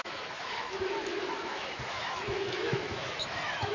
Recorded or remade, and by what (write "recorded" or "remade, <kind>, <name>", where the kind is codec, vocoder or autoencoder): remade, autoencoder, DAC-VAE